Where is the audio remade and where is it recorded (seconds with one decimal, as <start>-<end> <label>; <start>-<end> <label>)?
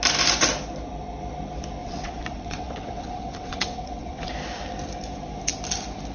0.0-1.8 recorded; 1.8-4.3 remade; 4.3-6.1 recorded